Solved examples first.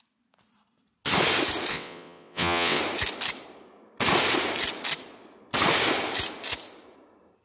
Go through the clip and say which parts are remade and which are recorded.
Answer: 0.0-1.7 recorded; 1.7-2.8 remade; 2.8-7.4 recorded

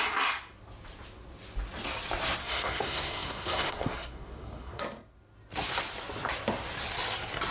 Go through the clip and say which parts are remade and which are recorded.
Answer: 0.0-2.4 recorded; 2.4-4.8 remade; 4.8-7.5 recorded

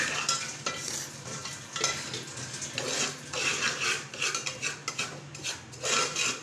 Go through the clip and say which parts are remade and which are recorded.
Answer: 0.0-6.4 recorded

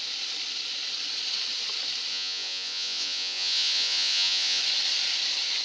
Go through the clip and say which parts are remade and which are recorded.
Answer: 0.0-2.1 recorded; 2.1-4.6 remade; 4.6-5.6 recorded